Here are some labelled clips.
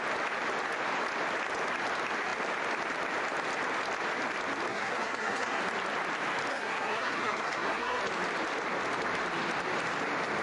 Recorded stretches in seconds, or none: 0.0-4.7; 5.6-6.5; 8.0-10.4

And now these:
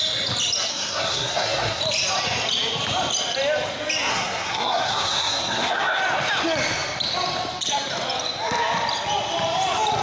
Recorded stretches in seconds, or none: 0.0-0.7; 1.8-4.1; 6.0-10.0

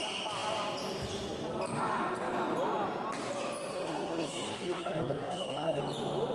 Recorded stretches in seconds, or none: 0.0-3.7; 5.8-6.3